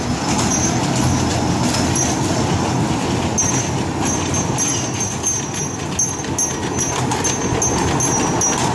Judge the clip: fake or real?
real